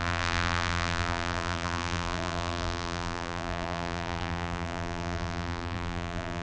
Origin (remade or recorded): remade